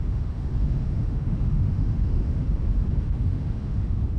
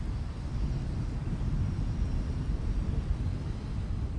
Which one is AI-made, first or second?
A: first